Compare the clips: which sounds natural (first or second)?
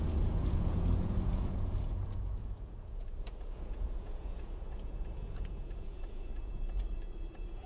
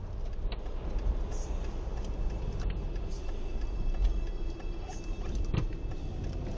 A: second